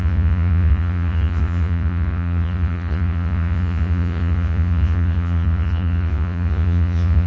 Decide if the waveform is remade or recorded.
remade